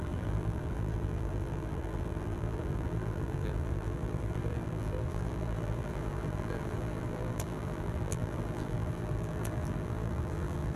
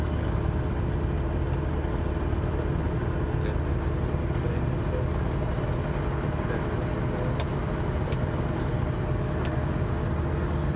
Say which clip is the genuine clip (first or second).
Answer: second